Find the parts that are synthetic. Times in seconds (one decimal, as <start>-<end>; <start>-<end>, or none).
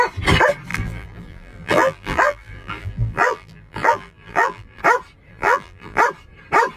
0.7-4.8; 5.3-6.0